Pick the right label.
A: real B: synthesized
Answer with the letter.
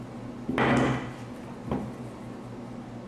A